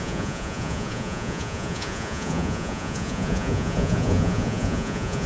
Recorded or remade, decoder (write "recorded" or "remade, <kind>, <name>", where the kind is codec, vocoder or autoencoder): remade, vocoder, Vocos